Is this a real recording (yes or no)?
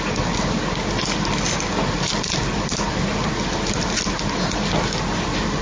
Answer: yes